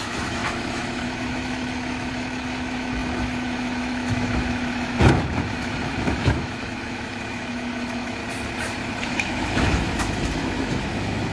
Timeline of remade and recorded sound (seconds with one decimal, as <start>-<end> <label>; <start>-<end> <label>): 0.0-8.2 remade; 8.2-9.1 recorded; 9.1-11.3 remade